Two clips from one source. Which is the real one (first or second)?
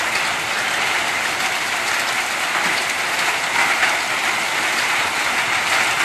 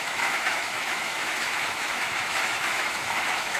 first